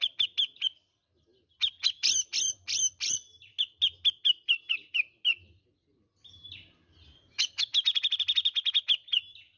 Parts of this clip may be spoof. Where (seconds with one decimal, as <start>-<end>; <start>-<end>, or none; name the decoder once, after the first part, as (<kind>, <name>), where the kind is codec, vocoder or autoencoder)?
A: none